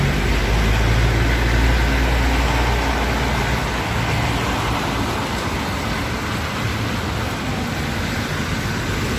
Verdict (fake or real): real